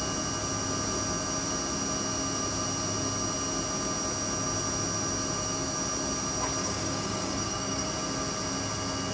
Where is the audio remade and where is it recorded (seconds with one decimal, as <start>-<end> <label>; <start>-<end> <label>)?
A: 0.0-6.6 recorded; 6.6-7.9 remade; 7.9-9.1 recorded